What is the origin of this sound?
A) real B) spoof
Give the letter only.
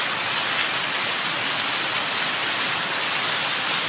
A